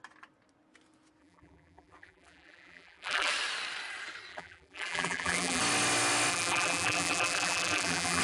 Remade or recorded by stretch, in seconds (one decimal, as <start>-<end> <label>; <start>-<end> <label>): 0.0-1.2 recorded; 1.2-3.3 remade; 3.3-4.3 recorded; 4.3-5.6 remade; 5.6-6.3 recorded; 6.3-8.2 remade